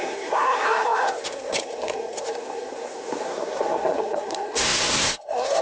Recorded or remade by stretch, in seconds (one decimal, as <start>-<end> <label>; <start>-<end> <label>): 0.0-5.6 remade

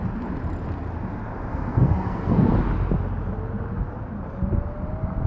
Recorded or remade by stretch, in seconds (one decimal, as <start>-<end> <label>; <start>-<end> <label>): 0.0-1.5 recorded; 1.5-2.5 remade; 2.5-5.3 recorded